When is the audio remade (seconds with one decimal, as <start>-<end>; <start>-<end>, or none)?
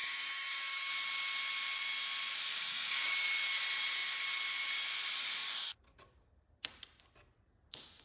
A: 0.0-0.9; 2.5-3.1